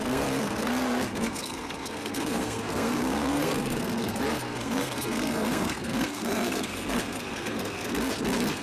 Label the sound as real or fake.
fake